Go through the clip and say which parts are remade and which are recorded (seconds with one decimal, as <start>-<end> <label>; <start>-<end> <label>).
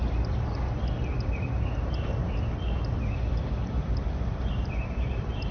0.0-3.3 recorded; 3.3-3.8 remade; 3.8-4.6 recorded; 4.6-5.5 remade